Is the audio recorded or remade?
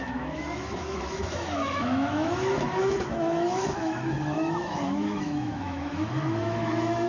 remade